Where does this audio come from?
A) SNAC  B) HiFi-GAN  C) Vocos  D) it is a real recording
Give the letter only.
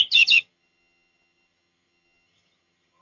B